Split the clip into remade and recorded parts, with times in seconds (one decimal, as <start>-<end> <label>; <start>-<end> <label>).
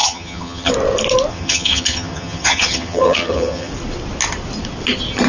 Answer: 0.0-0.7 remade; 0.7-1.3 recorded; 1.3-3.7 remade; 3.7-5.3 recorded